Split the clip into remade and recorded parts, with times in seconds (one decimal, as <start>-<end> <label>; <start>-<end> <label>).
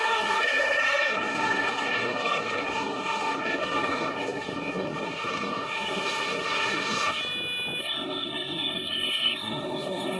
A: 0.0-7.2 remade; 7.2-7.8 recorded; 7.8-10.2 remade